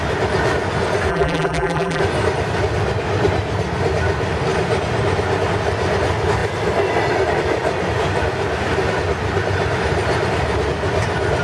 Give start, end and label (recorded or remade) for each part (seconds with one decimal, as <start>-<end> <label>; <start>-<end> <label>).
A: 0.0-1.1 recorded; 1.1-2.0 remade; 2.0-11.4 recorded